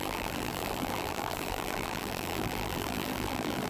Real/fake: fake